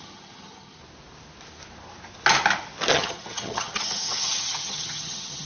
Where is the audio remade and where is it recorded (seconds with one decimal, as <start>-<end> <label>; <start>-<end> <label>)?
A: 0.0-0.8 remade; 0.8-2.9 recorded; 2.9-5.4 remade